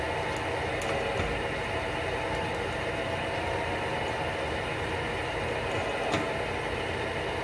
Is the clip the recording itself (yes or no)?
yes